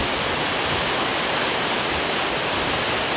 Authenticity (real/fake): real